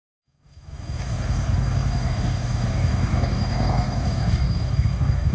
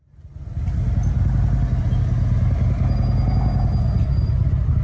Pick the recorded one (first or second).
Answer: second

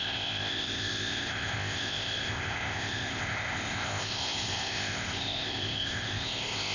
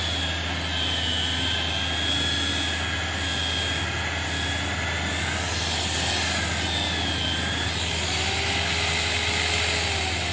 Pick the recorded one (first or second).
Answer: second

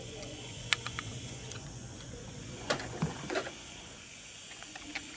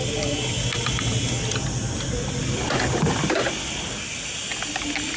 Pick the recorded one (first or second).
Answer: second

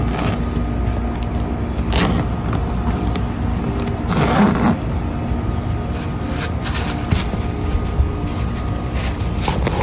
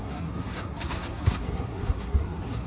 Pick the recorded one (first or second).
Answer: first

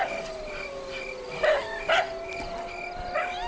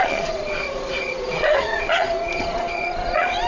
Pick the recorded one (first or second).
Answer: first